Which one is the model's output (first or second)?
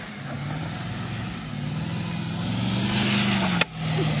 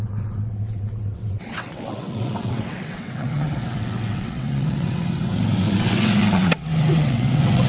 second